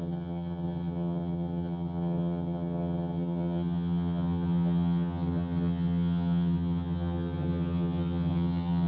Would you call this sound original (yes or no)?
no